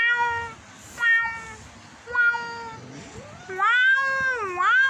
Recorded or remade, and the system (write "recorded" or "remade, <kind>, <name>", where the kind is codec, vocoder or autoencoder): recorded